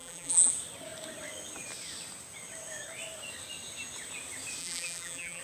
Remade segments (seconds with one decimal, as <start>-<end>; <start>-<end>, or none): 0.0-0.5; 4.6-5.4